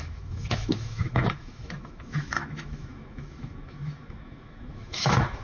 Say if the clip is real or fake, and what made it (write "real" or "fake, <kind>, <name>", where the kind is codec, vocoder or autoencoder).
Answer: fake, autoencoder, DAC-VAE